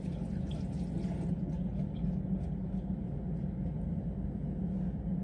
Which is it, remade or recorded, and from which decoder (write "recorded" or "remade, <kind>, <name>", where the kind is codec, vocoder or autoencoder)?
recorded